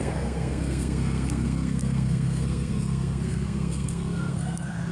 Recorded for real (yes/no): no